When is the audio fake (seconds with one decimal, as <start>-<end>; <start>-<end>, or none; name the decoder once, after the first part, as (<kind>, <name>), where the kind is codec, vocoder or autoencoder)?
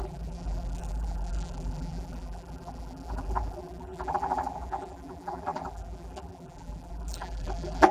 0.0-7.9 (vocoder, BigVGAN v2)